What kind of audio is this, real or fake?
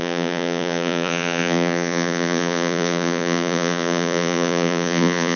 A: fake